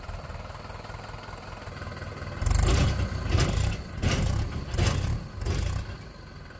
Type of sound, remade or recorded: recorded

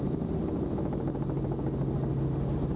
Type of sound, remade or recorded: recorded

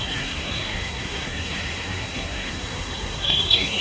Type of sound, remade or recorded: remade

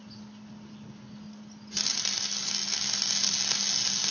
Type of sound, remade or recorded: recorded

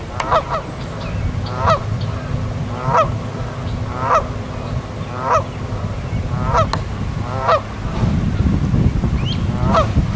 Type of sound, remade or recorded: recorded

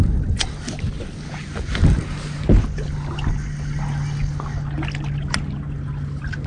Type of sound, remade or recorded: recorded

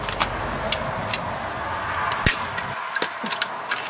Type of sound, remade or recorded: recorded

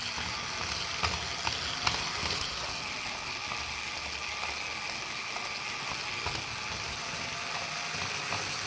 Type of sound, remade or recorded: recorded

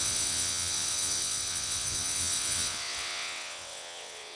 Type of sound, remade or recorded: remade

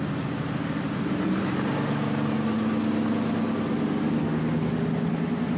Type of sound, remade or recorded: recorded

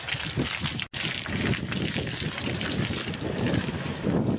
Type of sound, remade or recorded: recorded